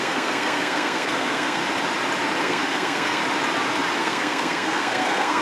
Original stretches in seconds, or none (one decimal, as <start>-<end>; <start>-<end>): 1.6-2.4; 3.2-4.0